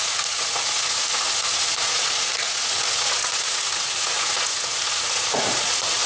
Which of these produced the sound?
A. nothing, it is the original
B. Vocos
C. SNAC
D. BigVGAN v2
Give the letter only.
B